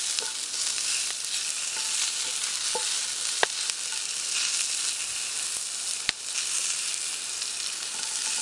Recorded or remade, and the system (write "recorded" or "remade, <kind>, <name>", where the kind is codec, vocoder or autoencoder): recorded